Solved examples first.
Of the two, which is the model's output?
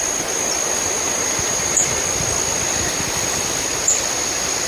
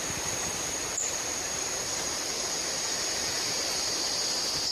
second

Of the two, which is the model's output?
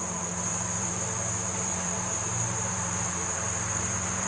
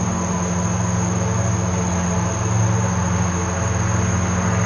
first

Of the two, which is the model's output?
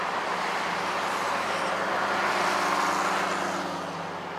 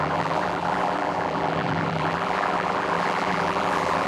second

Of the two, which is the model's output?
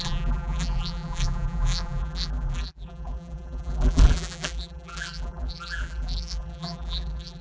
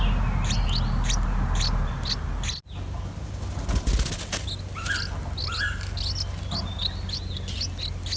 first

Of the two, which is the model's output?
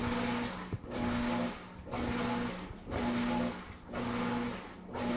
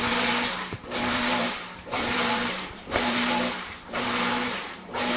second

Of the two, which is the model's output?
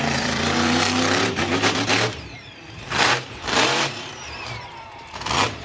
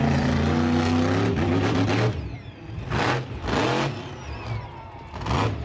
first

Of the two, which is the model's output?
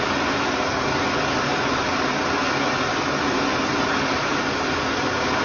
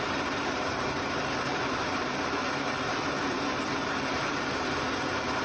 second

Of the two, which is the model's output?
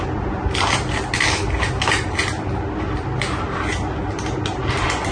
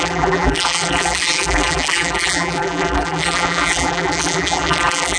second